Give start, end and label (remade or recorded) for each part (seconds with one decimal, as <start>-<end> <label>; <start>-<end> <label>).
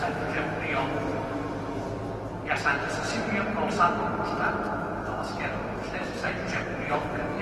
0.0-1.1 remade; 1.1-4.5 recorded; 4.5-7.4 remade